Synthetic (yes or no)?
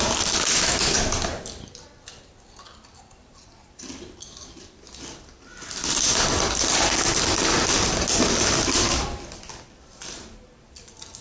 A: no